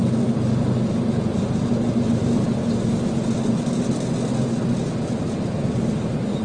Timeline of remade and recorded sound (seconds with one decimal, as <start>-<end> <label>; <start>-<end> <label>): 0.0-6.4 recorded